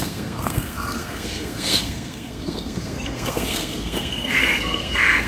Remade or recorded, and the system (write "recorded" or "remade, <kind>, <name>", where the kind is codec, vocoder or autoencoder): remade, codec, SNAC